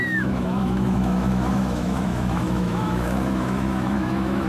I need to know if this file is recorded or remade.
remade